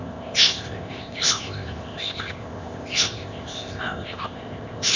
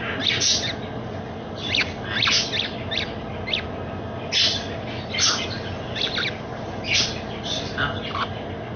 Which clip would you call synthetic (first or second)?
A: first